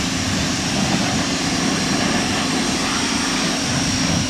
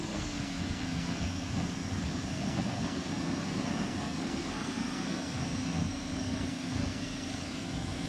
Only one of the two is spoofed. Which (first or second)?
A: second